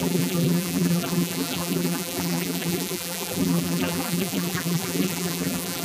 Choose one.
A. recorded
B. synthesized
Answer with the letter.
B